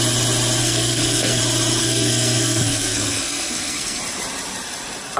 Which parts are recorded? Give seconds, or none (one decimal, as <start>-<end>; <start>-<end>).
0.0-0.6; 1.4-1.8; 4.0-5.2